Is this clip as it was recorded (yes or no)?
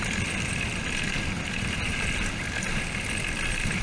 yes